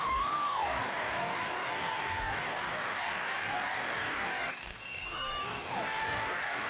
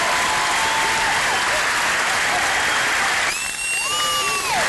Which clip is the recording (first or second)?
second